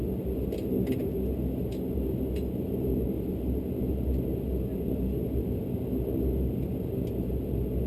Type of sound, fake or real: real